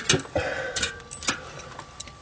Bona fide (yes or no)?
yes